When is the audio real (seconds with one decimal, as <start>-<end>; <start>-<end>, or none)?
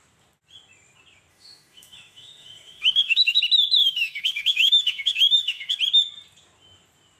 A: 0.0-1.3; 3.4-3.8; 5.8-7.2